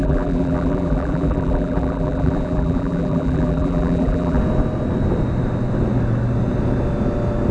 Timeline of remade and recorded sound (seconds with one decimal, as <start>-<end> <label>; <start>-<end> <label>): 0.0-4.4 remade; 4.4-7.5 recorded